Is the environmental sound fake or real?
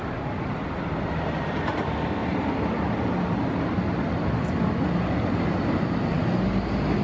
real